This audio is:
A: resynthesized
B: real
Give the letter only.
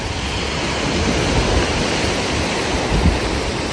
B